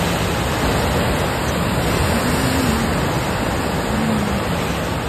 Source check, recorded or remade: recorded